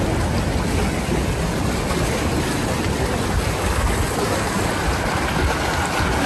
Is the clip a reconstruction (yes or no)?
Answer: no